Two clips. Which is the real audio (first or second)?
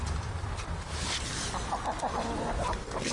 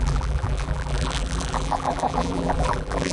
first